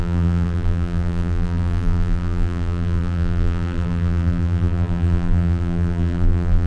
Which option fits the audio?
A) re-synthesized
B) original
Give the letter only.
A